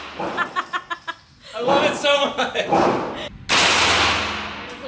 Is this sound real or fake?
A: real